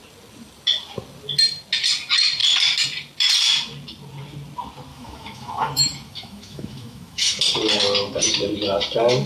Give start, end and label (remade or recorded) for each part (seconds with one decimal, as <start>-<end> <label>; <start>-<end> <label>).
0.0-4.9 recorded; 4.9-7.4 remade; 7.4-9.3 recorded